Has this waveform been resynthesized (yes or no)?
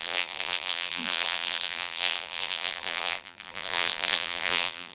yes